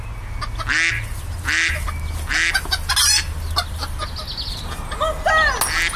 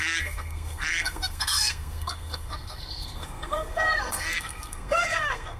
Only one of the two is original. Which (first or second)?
first